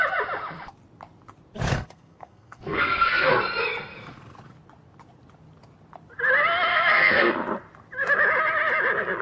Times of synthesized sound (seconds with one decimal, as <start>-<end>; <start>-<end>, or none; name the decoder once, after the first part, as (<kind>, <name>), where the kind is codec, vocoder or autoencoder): 1.7-3.3 (codec, SNAC); 6.7-7.3